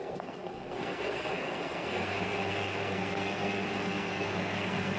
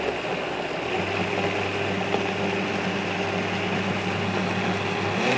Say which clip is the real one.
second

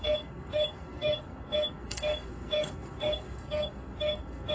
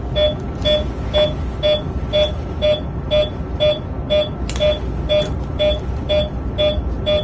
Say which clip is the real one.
second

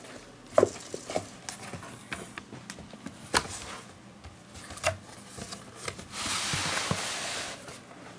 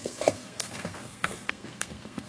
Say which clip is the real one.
first